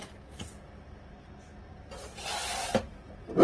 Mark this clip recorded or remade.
recorded